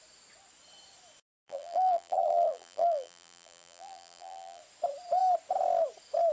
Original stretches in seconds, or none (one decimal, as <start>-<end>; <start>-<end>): 0.0-1.3; 4.6-6.3